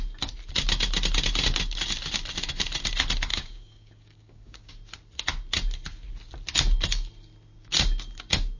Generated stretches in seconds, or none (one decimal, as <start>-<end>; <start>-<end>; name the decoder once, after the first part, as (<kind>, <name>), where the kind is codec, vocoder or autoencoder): 3.3-4.7 (codec, DAC)